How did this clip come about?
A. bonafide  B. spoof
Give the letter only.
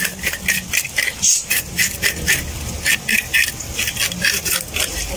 A